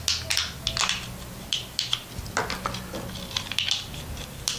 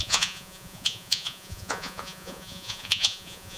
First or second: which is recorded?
first